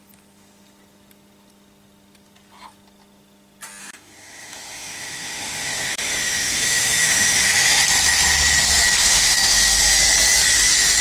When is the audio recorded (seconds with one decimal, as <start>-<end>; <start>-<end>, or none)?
0.0-3.8; 7.8-9.0; 9.8-11.0